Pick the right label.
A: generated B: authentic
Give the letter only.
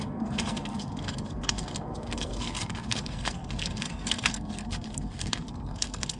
A